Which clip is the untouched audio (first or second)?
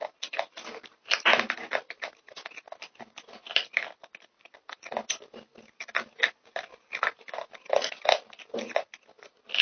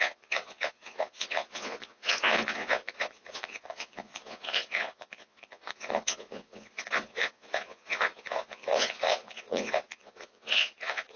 first